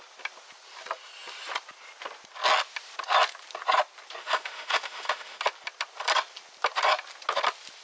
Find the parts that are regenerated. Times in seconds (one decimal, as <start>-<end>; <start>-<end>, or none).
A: 4.2-5.4